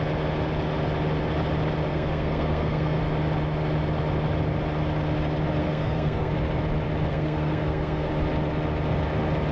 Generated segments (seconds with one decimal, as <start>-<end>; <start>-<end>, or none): 1.9-3.0; 5.6-6.3; 7.1-8.1